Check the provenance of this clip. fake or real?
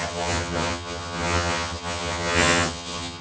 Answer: fake